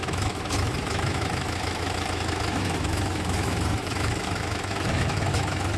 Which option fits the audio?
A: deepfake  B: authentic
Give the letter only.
A